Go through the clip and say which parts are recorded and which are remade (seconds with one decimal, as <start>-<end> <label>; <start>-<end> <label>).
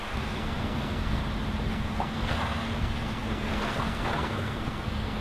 0.0-1.2 remade; 1.2-1.7 recorded; 1.7-5.2 remade